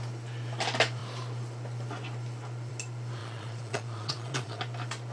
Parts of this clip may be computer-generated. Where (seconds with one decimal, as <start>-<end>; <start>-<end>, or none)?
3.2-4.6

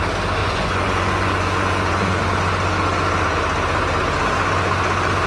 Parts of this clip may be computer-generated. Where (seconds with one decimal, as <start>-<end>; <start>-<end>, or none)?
0.4-2.2

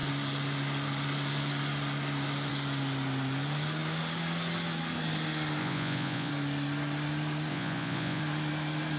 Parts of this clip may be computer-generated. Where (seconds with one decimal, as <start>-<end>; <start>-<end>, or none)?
5.6-6.3; 7.5-8.2